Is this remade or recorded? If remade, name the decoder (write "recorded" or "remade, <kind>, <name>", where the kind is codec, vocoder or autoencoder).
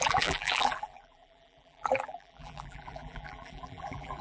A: remade, vocoder, BigVGAN v2